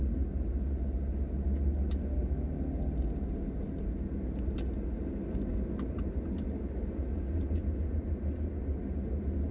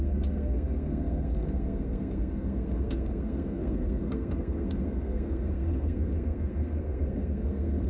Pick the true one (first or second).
first